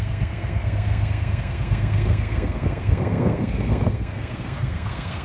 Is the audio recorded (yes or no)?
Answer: no